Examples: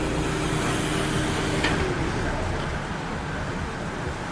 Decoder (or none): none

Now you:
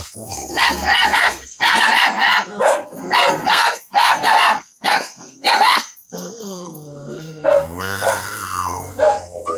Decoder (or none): codec, SNAC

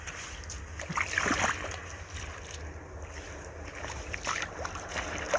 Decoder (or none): none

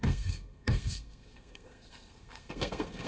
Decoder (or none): codec, SNAC